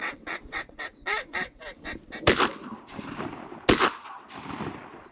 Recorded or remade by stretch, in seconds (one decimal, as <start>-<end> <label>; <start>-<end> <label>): 0.0-1.6 remade; 1.6-5.1 recorded

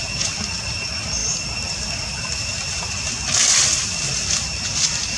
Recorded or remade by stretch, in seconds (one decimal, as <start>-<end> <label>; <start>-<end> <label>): 0.0-5.2 recorded

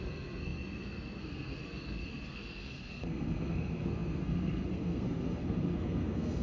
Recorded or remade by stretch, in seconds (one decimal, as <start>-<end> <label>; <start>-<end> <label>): 0.0-6.4 remade

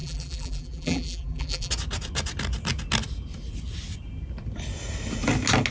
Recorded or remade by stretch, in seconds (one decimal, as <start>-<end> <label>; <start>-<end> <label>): 0.0-1.7 remade; 1.7-5.7 recorded